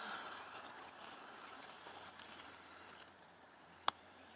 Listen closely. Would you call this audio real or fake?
fake